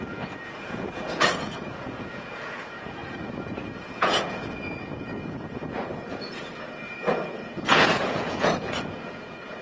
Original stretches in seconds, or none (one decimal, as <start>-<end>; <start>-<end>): none